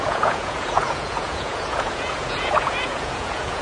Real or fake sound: fake